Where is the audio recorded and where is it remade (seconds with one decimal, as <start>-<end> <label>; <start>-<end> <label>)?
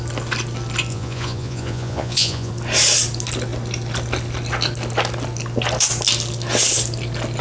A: 0.0-0.9 recorded; 0.9-2.5 remade; 2.5-7.4 recorded